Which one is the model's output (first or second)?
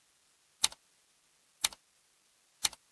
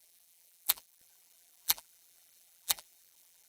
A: second